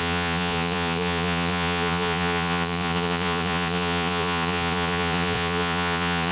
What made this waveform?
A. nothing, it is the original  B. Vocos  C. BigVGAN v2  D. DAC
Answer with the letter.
B